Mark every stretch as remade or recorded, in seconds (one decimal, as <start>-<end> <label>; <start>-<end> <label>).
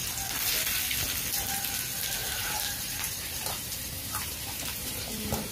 0.0-2.2 recorded; 2.2-5.5 remade